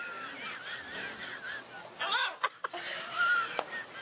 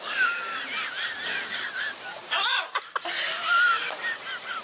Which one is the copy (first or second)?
second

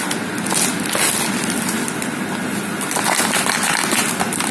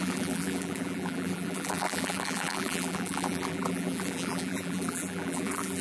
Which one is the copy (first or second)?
second